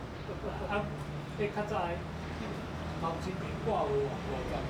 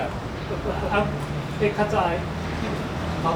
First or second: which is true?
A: first